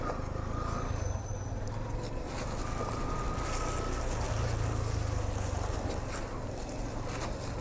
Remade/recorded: recorded